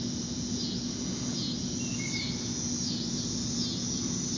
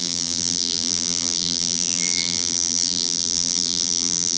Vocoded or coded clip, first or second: second